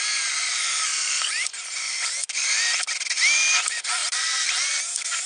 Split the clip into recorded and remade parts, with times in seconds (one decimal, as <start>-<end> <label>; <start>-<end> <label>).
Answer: 0.0-5.3 recorded